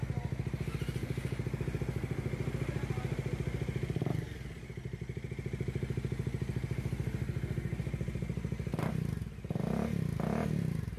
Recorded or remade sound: recorded